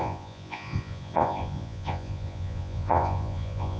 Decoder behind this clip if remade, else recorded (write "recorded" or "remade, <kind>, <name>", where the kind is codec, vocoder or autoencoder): remade, vocoder, Vocos